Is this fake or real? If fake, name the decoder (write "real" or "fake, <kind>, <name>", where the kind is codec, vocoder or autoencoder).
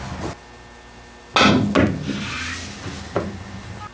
real